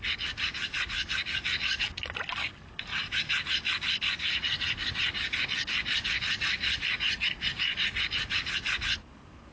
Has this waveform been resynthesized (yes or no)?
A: no